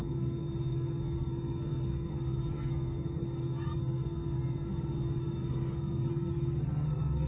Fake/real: fake